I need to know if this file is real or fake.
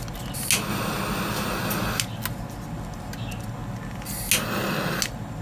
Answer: real